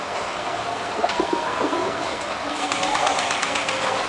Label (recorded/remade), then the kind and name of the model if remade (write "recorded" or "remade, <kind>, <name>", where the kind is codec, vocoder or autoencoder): remade, codec, SNAC